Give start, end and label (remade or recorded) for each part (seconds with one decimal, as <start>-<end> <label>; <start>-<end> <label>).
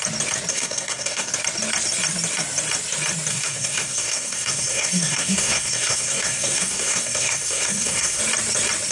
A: 0.0-0.5 recorded; 0.5-1.3 remade; 1.3-3.3 recorded; 3.3-8.2 remade; 8.2-8.9 recorded